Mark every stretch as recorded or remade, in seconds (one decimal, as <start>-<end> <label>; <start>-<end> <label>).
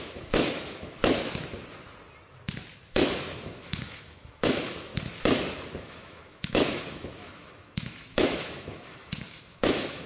0.0-1.0 remade; 1.0-2.9 recorded; 2.9-4.9 remade; 4.9-5.8 recorded; 5.8-10.1 remade